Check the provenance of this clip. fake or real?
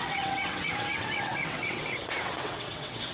fake